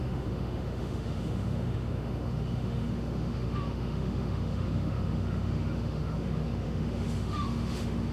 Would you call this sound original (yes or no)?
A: no